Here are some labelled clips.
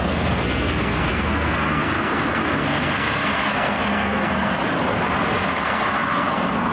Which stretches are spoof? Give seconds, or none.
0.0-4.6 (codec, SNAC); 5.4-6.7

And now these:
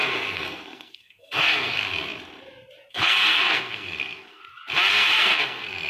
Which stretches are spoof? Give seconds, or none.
0.0-1.8 (codec, SNAC); 2.9-4.4; 4.9-5.9

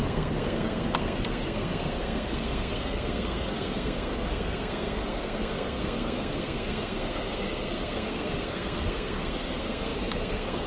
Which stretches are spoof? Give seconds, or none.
0.0-10.7 (codec, SNAC)

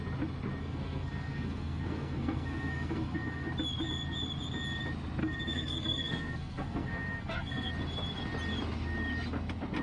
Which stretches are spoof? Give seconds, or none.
0.6-3.5 (codec, SNAC); 5.2-7.7

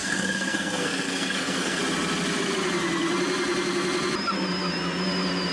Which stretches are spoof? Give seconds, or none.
0.0-1.8 (codec, SNAC)